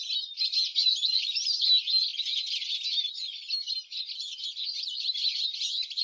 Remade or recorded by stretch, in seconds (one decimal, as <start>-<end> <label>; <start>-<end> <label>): 0.0-6.0 recorded